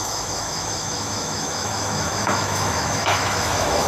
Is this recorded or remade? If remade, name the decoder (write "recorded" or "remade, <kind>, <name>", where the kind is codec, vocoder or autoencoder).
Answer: remade, autoencoder, DAC-VAE